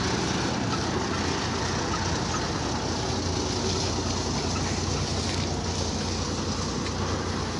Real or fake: real